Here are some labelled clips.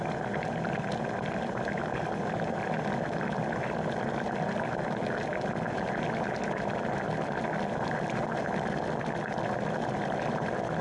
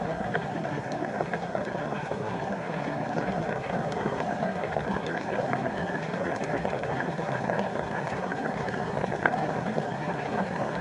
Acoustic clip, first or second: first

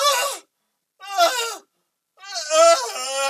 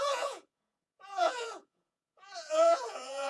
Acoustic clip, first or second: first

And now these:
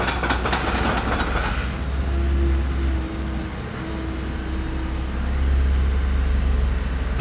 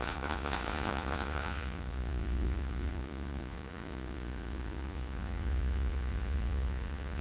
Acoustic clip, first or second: first